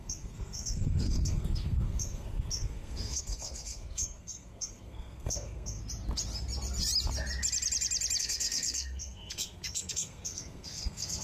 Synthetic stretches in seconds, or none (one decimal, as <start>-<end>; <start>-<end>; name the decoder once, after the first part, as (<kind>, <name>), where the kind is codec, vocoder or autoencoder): 0.0-5.8 (codec, SNAC); 8.2-11.2